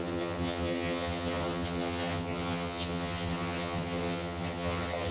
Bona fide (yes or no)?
no